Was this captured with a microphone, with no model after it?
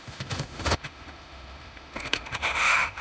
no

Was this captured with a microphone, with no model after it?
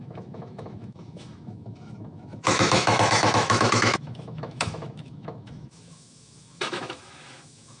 no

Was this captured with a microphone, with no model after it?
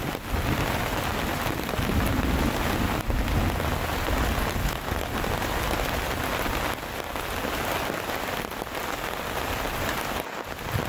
yes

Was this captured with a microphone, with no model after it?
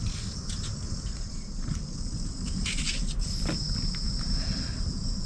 yes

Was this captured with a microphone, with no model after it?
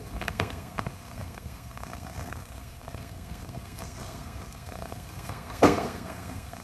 no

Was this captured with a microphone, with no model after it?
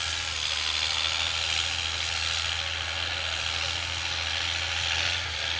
yes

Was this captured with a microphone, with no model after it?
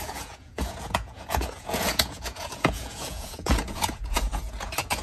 no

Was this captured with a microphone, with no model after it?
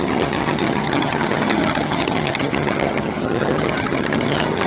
no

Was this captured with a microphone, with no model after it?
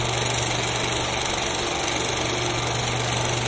yes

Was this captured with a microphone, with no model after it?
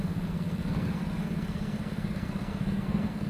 no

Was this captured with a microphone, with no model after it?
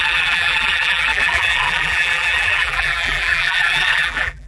no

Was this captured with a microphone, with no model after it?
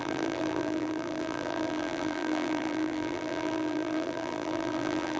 no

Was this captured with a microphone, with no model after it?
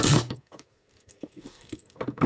no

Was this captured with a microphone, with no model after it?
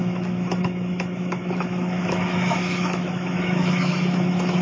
no